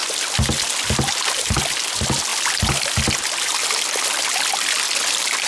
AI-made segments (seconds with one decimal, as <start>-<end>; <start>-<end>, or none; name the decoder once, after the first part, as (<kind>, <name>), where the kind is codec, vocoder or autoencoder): none